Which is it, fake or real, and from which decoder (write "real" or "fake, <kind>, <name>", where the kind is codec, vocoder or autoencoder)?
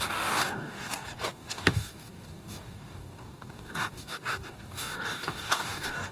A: fake, codec, DAC